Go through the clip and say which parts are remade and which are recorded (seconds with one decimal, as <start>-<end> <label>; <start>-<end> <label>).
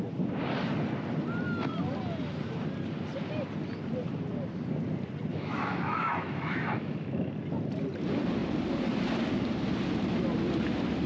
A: 0.0-5.3 recorded; 5.3-7.3 remade; 7.3-11.1 recorded